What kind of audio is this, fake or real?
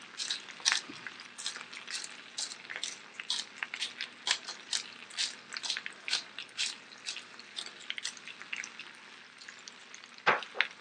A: real